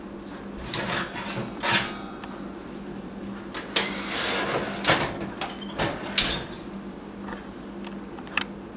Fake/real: real